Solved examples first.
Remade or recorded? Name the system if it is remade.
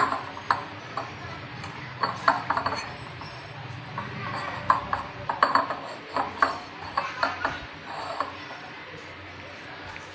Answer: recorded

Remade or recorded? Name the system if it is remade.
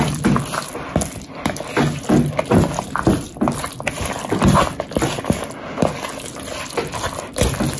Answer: recorded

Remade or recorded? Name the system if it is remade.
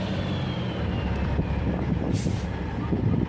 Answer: recorded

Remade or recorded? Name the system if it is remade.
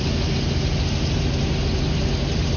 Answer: recorded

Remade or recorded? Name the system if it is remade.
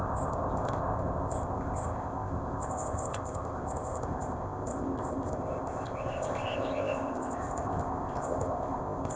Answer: remade, codec, ZipCodec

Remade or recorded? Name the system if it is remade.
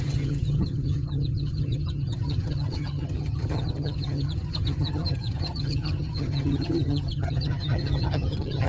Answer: remade, vocoder, HiFi-GAN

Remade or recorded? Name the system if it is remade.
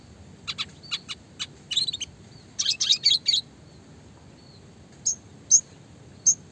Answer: recorded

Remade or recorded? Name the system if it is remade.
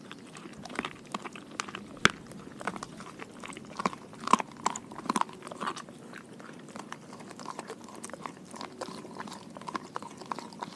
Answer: recorded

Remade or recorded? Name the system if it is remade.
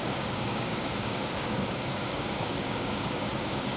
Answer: remade, codec, DAC